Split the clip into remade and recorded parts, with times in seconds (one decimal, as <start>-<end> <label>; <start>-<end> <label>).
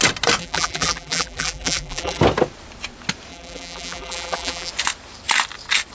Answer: 0.0-0.4 recorded; 0.4-2.2 remade; 2.2-3.3 recorded; 3.3-4.7 remade; 4.7-5.9 recorded